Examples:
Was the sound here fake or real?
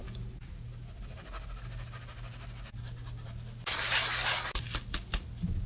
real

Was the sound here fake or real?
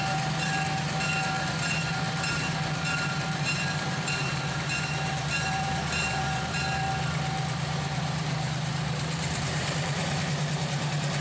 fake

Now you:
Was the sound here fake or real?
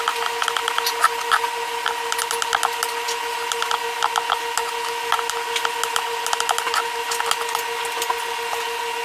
real